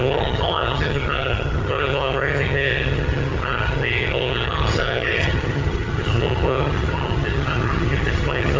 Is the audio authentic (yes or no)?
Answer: no